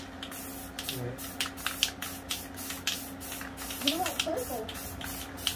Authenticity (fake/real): real